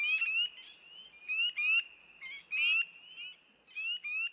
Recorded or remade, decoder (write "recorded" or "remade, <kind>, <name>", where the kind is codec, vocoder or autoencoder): recorded